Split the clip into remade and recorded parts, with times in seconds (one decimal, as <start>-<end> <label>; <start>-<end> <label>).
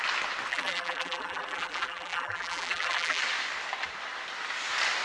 0.0-0.5 recorded; 0.5-3.2 remade; 3.2-5.0 recorded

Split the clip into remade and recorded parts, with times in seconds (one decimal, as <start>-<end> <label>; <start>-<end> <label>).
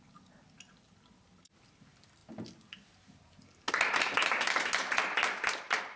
0.0-6.0 recorded